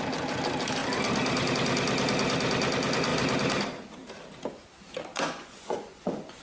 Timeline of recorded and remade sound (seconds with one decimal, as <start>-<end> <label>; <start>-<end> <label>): 0.0-5.1 recorded; 5.1-6.4 remade